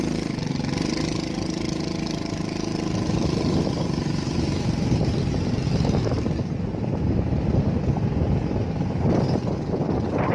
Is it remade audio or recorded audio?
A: recorded